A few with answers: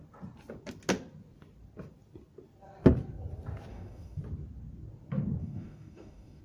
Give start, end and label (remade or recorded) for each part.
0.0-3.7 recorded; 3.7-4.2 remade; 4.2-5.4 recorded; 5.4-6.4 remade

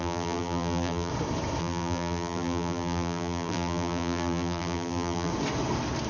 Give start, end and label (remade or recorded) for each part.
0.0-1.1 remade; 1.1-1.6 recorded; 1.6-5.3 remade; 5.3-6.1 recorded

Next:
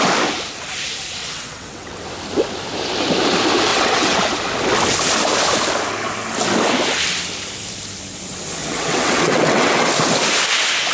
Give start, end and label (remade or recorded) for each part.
0.0-1.2 recorded; 1.2-2.0 remade; 2.0-3.7 recorded; 3.7-4.2 remade; 4.2-8.6 recorded; 8.6-9.9 remade; 9.9-10.9 recorded

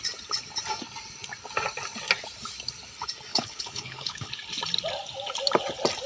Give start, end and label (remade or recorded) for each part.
0.0-3.3 recorded; 3.3-4.3 remade; 4.3-6.1 recorded

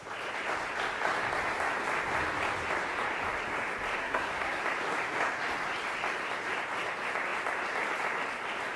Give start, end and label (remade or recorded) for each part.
0.0-4.0 recorded; 4.0-4.6 remade; 4.6-8.8 recorded